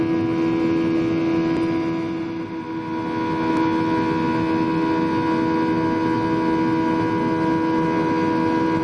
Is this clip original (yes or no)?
yes